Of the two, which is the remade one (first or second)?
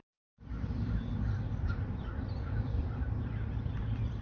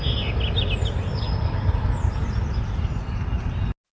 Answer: first